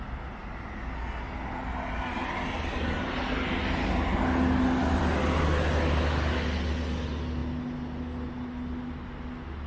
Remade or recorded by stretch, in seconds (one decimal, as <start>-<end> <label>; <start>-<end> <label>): 0.0-9.7 recorded